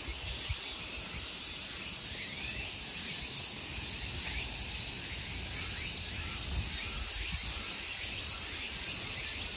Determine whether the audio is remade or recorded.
recorded